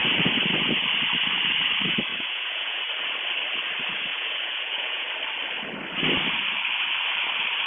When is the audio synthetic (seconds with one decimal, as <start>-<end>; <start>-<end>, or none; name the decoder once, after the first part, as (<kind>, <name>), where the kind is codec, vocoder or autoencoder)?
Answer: 2.1-2.8 (vocoder, Vocos); 4.1-5.1

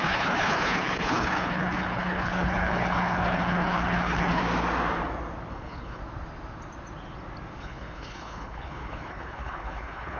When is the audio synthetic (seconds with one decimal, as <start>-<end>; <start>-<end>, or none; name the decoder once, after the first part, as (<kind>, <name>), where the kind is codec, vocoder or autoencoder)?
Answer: 0.0-4.4 (codec, HILCodec); 5.5-6.0; 7.6-10.2

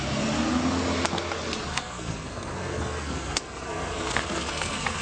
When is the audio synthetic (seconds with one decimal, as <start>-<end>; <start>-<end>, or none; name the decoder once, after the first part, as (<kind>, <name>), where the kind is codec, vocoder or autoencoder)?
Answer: 1.7-5.0 (codec, SNAC)